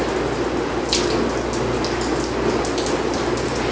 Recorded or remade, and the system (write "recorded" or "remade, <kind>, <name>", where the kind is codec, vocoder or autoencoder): recorded